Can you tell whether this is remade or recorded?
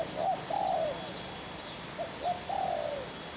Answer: recorded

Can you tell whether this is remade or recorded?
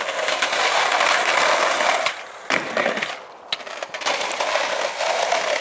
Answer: recorded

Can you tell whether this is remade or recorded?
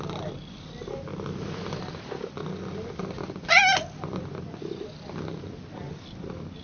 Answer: recorded